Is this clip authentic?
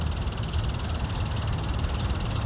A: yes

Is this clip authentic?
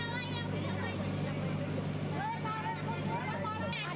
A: yes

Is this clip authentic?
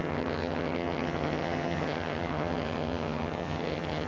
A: no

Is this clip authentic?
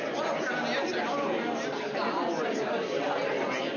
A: yes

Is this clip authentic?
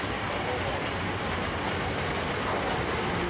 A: yes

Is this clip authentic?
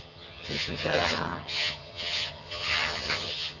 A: no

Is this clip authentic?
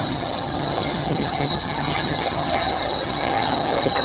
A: no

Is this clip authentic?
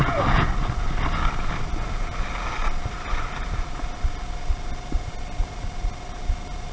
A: yes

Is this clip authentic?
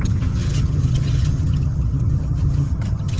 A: no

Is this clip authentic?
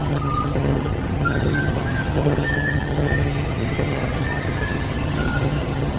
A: no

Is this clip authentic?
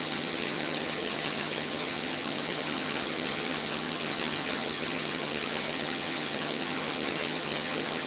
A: no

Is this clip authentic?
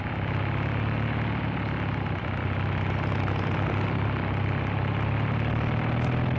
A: yes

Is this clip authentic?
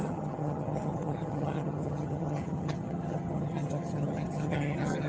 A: no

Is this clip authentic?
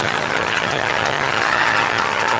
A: no